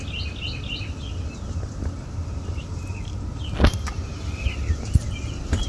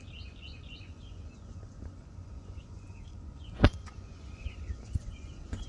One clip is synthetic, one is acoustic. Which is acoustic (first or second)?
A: first